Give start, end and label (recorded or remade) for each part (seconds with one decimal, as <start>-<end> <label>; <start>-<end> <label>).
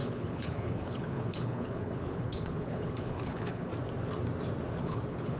0.0-3.7 remade; 3.7-4.8 recorded; 4.8-5.4 remade